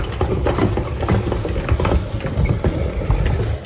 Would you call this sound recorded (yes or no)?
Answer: yes